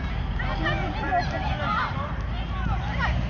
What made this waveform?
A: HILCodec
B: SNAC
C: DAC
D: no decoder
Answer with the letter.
D